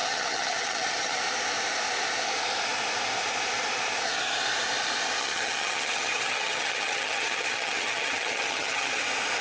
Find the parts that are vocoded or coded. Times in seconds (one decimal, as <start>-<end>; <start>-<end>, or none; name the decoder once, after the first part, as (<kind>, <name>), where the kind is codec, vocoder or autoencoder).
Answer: 0.0-1.2 (vocoder, HiFi-GAN); 5.2-9.0